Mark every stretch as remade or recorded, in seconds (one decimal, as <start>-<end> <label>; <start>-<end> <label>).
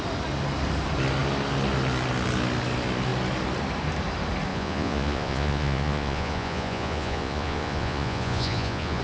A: 0.0-4.5 recorded; 4.5-9.0 remade